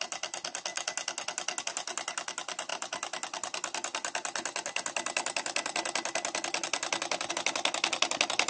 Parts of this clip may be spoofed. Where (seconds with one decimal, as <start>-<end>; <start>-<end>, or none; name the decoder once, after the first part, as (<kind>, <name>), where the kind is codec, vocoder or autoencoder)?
none